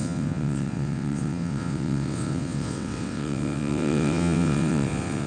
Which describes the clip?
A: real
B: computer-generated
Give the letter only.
B